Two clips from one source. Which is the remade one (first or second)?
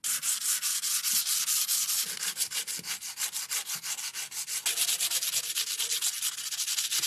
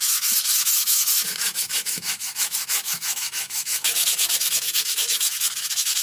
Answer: second